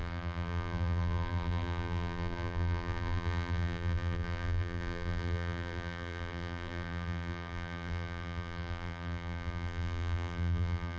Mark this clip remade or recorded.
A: remade